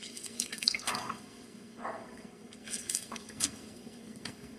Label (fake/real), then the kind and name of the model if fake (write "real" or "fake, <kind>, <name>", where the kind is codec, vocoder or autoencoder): fake, codec, SNAC